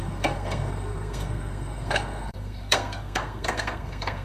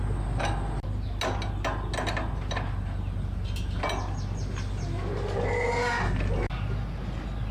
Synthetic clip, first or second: first